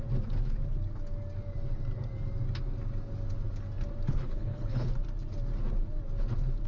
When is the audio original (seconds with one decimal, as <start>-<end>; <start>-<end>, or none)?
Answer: 0.0-4.1; 4.9-6.7